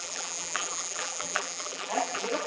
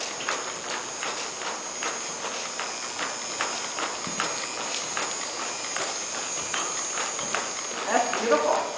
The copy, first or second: first